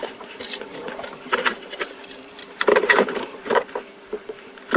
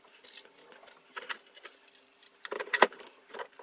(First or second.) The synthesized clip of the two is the first